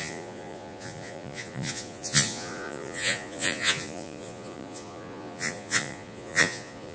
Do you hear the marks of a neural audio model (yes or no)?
yes